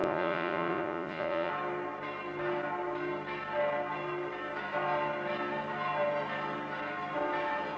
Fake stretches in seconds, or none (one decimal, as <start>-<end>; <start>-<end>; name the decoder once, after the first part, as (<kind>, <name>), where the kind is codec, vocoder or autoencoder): 0.0-1.5 (vocoder, Vocos)